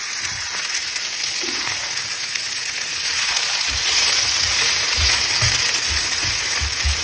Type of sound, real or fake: fake